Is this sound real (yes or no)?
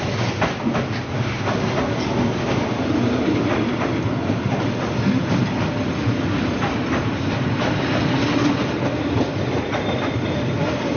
yes